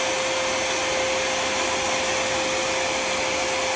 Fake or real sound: real